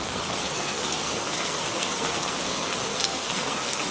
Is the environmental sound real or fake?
fake